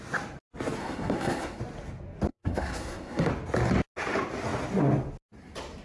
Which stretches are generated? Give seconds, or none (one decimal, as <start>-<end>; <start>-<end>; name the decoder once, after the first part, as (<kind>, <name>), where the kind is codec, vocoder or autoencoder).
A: 0.8-1.6 (codec, SNAC); 2.3-3.3